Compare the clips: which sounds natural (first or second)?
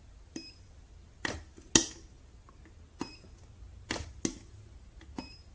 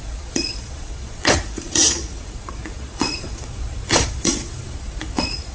first